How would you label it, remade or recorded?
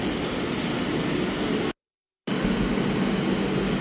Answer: recorded